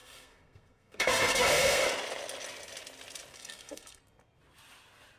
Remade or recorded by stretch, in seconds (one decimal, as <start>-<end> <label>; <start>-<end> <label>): 0.0-1.8 remade; 1.8-3.3 recorded; 3.3-4.0 remade; 4.0-5.2 recorded